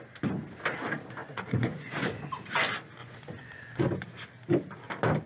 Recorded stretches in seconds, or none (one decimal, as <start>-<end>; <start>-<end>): 0.0-1.2; 2.2-3.0; 3.8-5.3